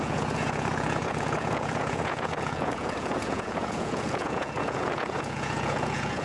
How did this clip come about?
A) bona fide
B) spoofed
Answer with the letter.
B